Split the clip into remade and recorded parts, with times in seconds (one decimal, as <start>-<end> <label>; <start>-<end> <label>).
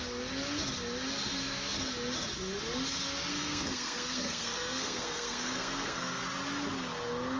0.0-3.3 recorded; 3.3-6.2 remade; 6.2-7.4 recorded